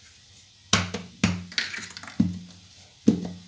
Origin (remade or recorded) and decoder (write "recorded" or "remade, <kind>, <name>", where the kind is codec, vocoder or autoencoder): recorded